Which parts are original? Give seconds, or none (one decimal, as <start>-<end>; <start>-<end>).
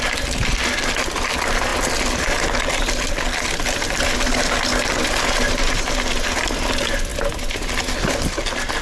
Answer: 0.0-8.8